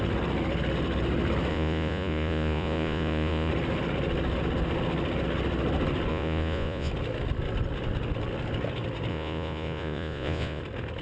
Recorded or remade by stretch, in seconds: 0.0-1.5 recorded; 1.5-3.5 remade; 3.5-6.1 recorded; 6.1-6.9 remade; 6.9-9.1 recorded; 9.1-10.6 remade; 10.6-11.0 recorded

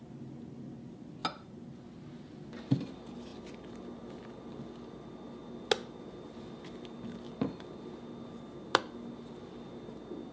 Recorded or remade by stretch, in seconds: 0.0-10.3 recorded

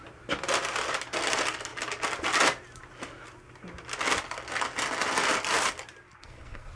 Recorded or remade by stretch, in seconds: 0.0-6.2 recorded; 6.2-6.7 remade